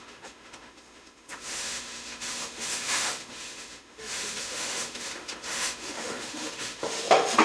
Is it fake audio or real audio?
fake